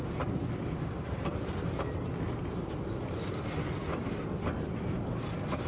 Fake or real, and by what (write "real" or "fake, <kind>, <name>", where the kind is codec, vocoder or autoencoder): real